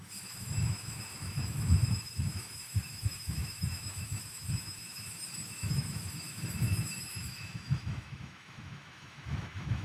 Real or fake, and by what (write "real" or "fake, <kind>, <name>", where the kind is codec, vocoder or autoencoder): fake, autoencoder, DAC-VAE